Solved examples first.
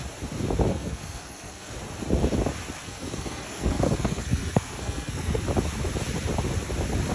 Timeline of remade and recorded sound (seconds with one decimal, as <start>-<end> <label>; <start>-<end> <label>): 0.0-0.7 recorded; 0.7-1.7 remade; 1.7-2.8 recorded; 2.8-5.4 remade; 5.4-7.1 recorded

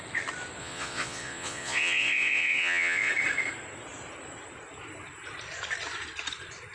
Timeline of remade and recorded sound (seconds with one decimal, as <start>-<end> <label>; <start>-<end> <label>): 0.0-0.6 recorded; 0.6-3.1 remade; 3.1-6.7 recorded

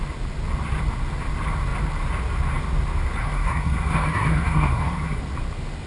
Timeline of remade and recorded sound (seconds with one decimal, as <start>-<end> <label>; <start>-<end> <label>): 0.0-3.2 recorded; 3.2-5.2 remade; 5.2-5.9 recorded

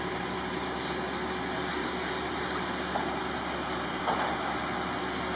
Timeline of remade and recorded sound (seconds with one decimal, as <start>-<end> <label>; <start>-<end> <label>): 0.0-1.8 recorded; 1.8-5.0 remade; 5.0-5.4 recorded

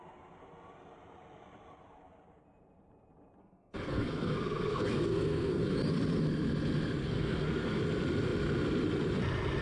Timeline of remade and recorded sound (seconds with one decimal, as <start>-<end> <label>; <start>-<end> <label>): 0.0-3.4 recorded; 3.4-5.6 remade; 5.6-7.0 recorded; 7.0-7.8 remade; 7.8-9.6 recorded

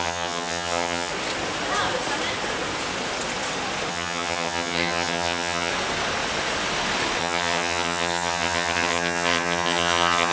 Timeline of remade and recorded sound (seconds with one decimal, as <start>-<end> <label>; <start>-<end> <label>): 0.0-1.1 remade; 1.1-3.9 recorded; 3.9-5.7 remade; 5.7-7.2 recorded; 7.2-10.3 remade

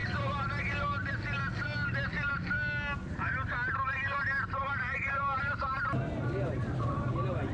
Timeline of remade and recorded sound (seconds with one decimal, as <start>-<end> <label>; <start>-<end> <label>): 0.0-7.5 recorded